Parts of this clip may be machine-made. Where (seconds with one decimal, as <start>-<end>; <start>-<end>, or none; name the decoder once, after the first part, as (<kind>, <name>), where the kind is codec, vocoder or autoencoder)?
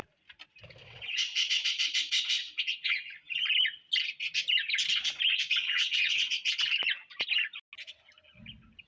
0.8-3.2 (vocoder, WaveNeXt); 5.6-6.5